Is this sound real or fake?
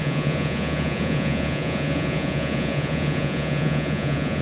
fake